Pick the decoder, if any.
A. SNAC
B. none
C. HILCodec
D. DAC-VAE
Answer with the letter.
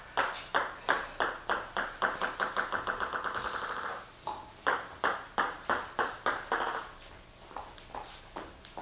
B